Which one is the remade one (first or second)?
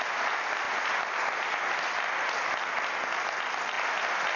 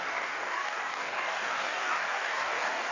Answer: second